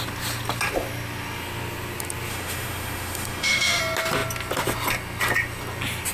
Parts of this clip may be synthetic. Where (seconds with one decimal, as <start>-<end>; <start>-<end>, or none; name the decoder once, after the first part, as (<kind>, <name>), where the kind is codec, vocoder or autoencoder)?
2.3-3.8 (autoencoder, DAC-VAE)